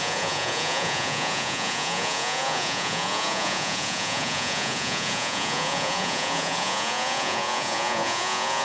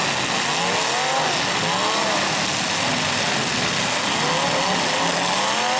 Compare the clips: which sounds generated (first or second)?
first